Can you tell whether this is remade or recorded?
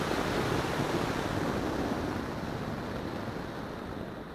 recorded